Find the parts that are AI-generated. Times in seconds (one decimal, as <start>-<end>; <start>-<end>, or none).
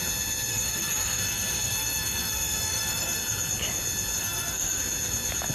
0.5-3.2; 4.1-4.8